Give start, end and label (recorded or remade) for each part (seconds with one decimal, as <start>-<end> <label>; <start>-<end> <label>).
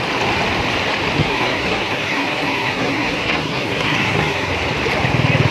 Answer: 0.0-1.2 recorded; 1.2-4.5 remade; 4.5-5.5 recorded